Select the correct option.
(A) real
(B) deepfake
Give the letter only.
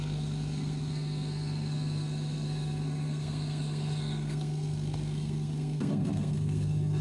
B